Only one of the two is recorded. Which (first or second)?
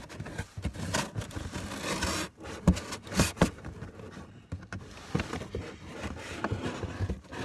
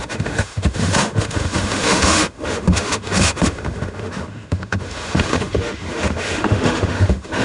first